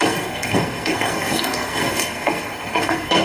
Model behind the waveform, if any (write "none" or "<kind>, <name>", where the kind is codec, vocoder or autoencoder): codec, SNAC